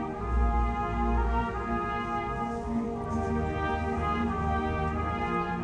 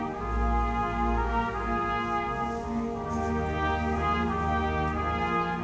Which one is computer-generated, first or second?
first